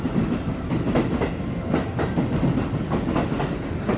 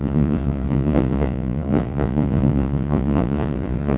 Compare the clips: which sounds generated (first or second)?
second